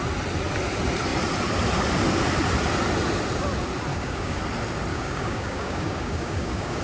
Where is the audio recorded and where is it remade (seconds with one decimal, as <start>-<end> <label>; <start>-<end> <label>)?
0.0-3.9 recorded; 3.9-4.4 remade; 4.4-4.9 recorded; 4.9-6.8 remade